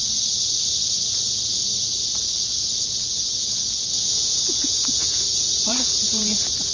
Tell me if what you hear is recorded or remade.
remade